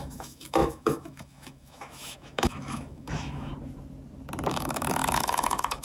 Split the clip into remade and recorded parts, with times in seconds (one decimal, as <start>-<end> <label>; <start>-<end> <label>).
0.0-3.5 remade; 3.5-4.5 recorded; 4.5-5.8 remade